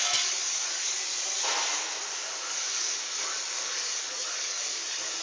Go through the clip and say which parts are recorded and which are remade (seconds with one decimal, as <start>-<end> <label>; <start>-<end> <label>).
0.0-1.1 remade; 1.1-2.5 recorded; 2.5-5.2 remade